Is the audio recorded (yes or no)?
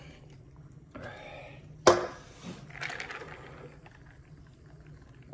yes